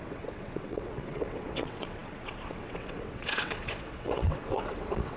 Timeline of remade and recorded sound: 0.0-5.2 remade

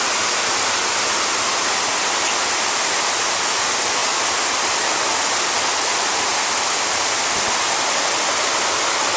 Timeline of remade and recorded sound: 0.0-9.2 recorded

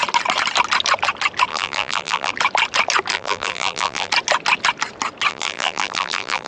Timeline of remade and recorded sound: 0.0-1.5 recorded; 1.5-2.3 remade; 2.3-3.1 recorded; 3.1-4.1 remade; 4.1-5.3 recorded; 5.3-6.5 remade

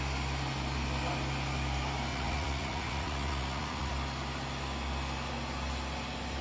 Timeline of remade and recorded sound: 0.0-2.1 recorded; 2.1-3.9 remade; 3.9-6.4 recorded

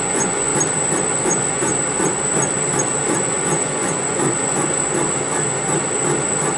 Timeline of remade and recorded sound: 0.0-0.5 remade; 0.5-1.1 recorded; 1.1-1.7 remade; 1.7-3.0 recorded; 3.0-4.8 remade; 4.8-6.6 recorded

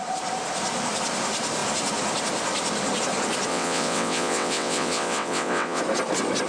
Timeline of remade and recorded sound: 0.0-3.5 recorded; 3.5-5.8 remade; 5.8-6.5 recorded

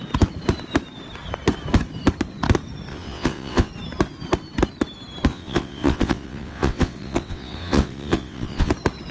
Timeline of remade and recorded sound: 0.0-2.9 recorded; 2.9-3.7 remade; 3.7-5.3 recorded; 5.3-8.7 remade; 8.7-9.1 recorded

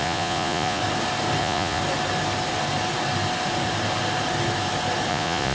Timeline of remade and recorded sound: 0.0-0.8 remade; 0.8-1.4 recorded; 1.4-1.8 remade; 1.8-5.1 recorded; 5.1-5.5 remade